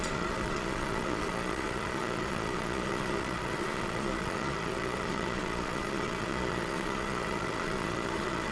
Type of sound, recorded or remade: remade